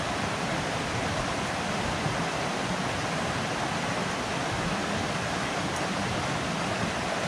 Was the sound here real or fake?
real